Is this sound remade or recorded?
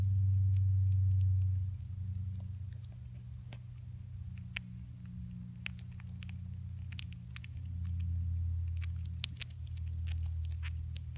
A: recorded